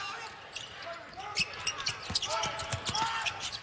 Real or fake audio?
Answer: real